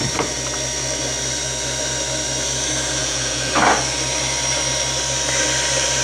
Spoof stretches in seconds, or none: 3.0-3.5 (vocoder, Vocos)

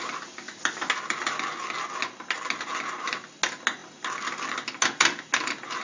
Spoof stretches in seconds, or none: none

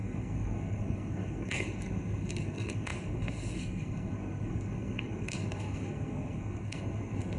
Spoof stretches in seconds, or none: 0.0-7.4 (codec, SNAC)

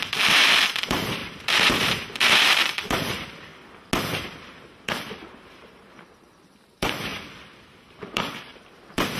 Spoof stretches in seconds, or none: 0.0-3.5 (vocoder, BigVGAN v2); 4.4-9.2

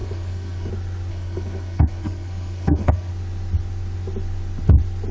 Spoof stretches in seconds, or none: 0.0-0.7 (codec, SNAC); 1.1-3.1

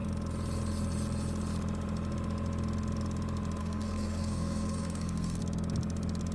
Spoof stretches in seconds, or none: 3.6-5.4 (codec, SNAC)

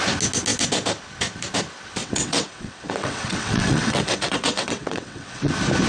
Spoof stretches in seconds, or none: 2.0-5.5 (vocoder, WaveNeXt)

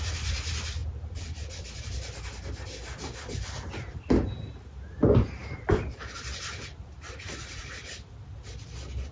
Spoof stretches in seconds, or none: 5.4-7.6 (vocoder, BigVGAN v2)